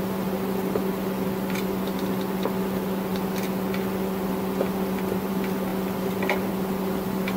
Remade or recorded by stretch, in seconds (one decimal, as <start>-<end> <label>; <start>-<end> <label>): 0.0-5.7 recorded; 5.7-6.5 remade; 6.5-7.4 recorded